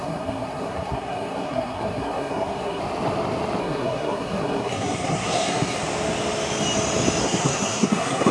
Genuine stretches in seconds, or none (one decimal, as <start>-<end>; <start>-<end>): 2.8-3.6; 5.8-7.2